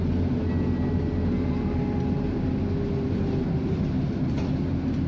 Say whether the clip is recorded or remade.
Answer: recorded